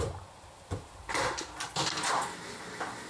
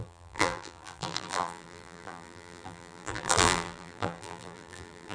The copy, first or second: second